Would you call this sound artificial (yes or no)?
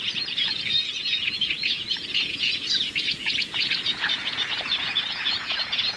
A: yes